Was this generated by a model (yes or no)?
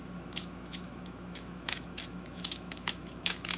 yes